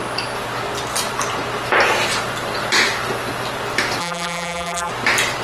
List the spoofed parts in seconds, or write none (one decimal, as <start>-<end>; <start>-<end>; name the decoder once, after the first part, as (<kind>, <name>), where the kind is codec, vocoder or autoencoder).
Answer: 4.0-4.9 (vocoder, BigVGAN v2)